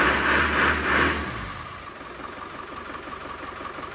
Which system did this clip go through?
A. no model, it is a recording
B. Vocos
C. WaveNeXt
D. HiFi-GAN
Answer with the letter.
A